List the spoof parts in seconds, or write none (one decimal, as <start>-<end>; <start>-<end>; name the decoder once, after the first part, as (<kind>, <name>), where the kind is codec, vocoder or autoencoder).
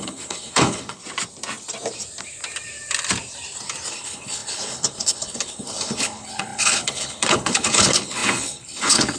0.0-1.0 (codec, HILCodec); 3.9-9.2